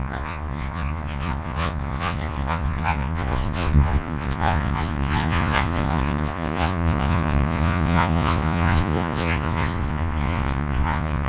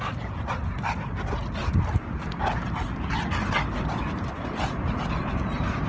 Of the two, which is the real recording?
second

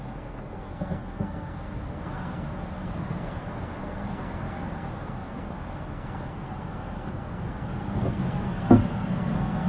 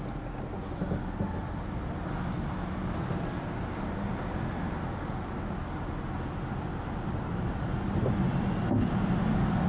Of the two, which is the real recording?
second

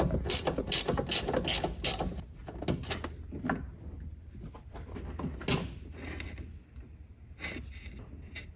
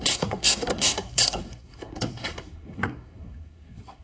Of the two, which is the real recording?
first